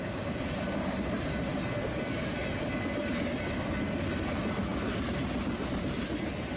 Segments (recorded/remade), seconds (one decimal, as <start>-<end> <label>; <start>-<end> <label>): 0.0-6.6 recorded